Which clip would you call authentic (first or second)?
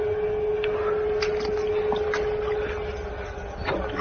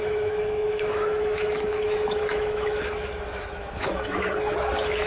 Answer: first